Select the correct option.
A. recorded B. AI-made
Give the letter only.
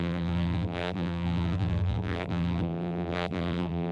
B